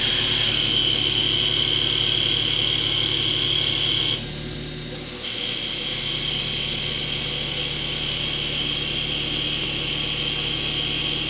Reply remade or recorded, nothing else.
recorded